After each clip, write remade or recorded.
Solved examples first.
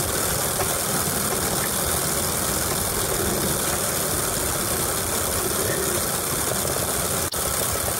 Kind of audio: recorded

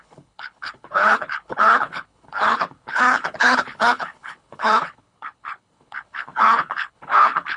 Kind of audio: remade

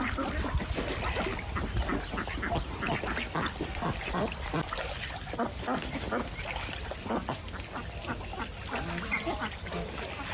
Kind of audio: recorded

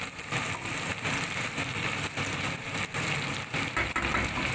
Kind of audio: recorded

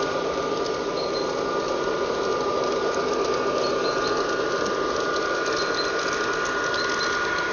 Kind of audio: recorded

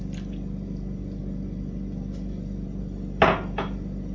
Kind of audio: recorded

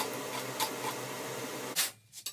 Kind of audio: recorded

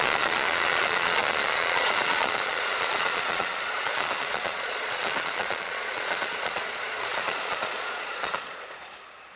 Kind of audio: remade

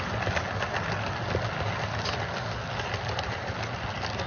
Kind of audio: recorded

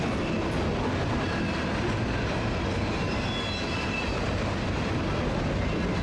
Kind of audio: recorded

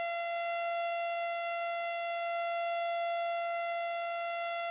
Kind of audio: recorded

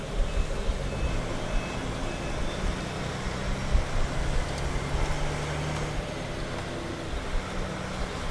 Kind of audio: recorded